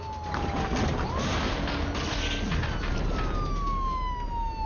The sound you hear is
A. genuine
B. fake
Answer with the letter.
A